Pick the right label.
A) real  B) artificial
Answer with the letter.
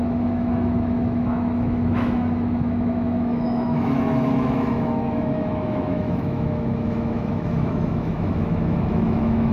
B